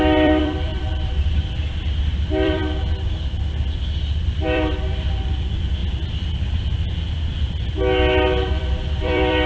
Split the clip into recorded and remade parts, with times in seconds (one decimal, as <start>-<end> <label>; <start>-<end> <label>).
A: 0.0-2.6 remade; 2.6-4.2 recorded; 4.2-5.8 remade; 5.8-8.5 recorded; 8.5-9.5 remade